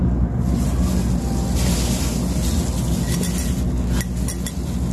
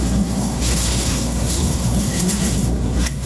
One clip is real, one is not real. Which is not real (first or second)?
second